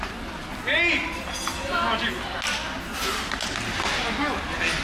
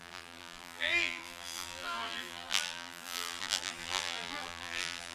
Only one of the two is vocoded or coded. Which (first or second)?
second